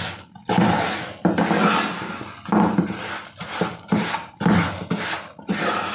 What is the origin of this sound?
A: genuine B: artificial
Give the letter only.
A